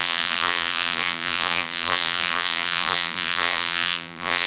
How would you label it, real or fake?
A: fake